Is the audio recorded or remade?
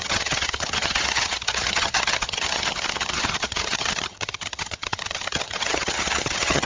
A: remade